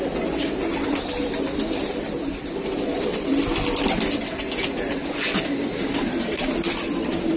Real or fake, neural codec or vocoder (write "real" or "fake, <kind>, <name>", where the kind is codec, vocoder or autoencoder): fake, vocoder, BigVGAN v2